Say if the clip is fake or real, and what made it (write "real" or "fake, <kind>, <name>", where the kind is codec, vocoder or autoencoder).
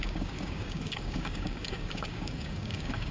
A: fake, codec, DAC